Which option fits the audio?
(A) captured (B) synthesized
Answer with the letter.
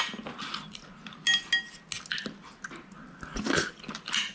A